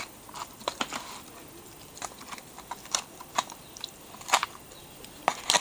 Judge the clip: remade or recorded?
remade